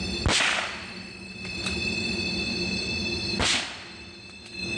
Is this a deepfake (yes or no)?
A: no